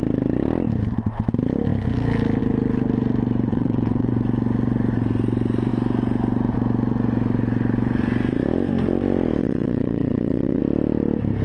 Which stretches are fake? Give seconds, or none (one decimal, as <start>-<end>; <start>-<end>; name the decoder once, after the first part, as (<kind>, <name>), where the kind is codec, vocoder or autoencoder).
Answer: 3.5-4.1 (vocoder, WaveNeXt); 9.4-10.6